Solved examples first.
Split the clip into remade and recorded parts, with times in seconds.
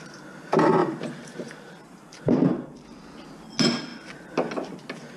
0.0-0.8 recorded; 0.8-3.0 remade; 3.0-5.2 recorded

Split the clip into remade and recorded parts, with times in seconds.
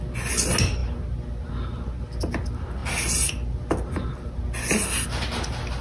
0.0-2.8 recorded; 2.8-4.3 remade; 4.3-5.8 recorded